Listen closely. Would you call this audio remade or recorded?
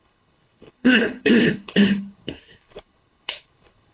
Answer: remade